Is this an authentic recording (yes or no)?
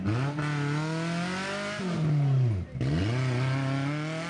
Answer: yes